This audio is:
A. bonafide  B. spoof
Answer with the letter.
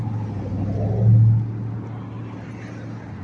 A